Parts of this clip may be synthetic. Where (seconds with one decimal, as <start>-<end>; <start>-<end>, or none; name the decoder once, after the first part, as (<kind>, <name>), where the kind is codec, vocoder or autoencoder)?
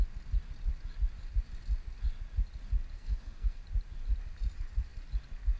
2.9-3.6 (codec, SNAC)